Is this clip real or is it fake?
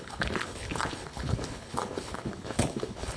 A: fake